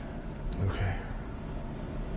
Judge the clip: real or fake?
real